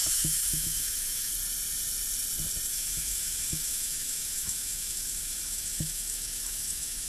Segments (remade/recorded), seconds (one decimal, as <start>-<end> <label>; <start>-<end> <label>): 0.0-1.3 remade; 1.3-2.7 recorded; 2.7-7.1 remade

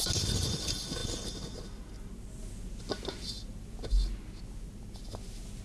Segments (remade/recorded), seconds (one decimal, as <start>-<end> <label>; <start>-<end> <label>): 0.0-5.6 recorded